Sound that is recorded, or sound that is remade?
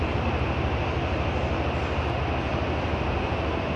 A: recorded